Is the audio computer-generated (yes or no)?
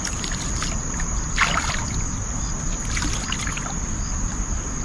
no